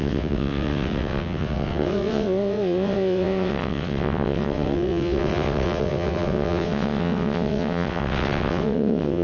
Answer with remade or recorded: remade